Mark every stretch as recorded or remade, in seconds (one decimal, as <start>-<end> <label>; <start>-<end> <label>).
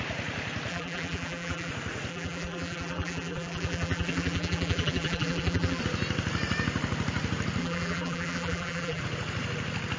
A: 0.0-0.7 recorded; 0.7-1.7 remade; 1.7-2.1 recorded; 2.1-5.8 remade; 5.8-7.6 recorded; 7.6-9.0 remade; 9.0-10.0 recorded